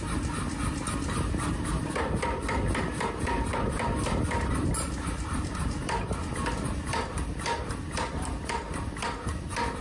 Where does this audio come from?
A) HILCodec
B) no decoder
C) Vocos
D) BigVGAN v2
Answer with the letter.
D